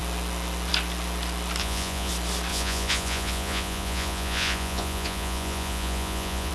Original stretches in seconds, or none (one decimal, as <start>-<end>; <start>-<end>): 0.0-1.6; 2.1-2.5